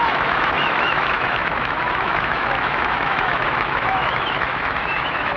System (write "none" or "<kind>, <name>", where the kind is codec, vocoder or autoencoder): autoencoder, DAC-VAE